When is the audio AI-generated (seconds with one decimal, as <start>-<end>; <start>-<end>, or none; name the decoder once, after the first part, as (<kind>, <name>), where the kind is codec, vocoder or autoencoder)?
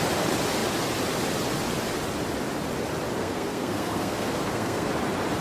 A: 3.2-4.9 (codec, SNAC)